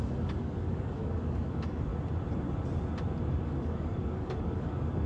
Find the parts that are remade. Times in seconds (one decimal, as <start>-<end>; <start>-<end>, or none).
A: 0.0-1.9; 3.3-5.1